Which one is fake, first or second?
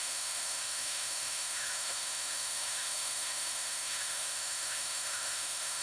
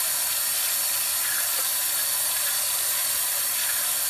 first